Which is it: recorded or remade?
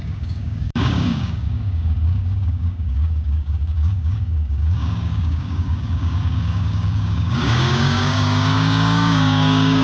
remade